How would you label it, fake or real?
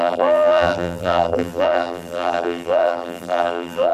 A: fake